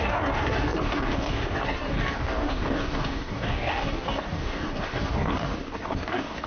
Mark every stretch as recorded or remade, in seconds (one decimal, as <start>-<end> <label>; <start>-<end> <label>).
0.0-6.5 remade